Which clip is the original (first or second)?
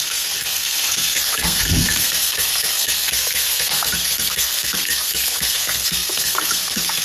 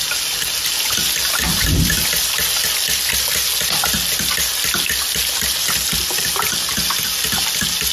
second